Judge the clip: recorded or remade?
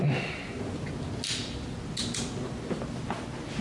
recorded